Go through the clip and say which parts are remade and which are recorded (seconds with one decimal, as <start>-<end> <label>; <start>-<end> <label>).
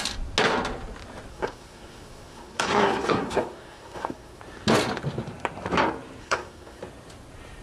0.0-1.3 recorded; 1.3-4.4 remade; 4.4-6.2 recorded; 6.2-6.8 remade; 6.8-7.6 recorded